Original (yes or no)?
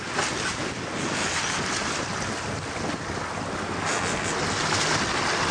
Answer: yes